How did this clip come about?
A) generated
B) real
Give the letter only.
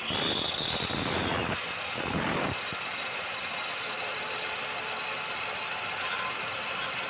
B